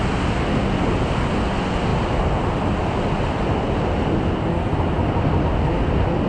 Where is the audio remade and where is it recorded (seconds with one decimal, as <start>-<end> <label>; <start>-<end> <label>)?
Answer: 0.0-6.3 recorded